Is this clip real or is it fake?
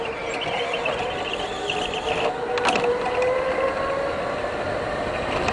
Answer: real